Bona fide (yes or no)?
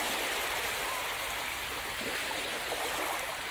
yes